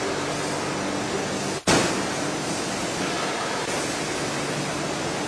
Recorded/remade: recorded